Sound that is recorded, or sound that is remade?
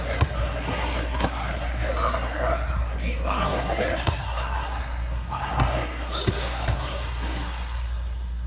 remade